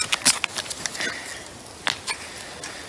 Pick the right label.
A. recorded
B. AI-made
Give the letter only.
A